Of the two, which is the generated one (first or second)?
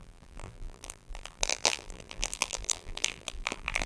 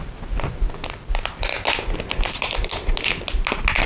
first